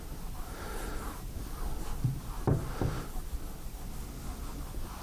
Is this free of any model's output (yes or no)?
yes